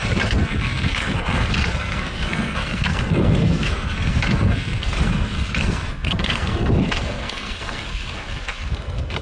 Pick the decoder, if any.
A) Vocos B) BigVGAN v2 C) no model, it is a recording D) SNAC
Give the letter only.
D